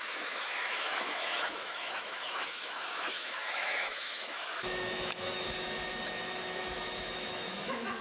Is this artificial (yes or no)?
yes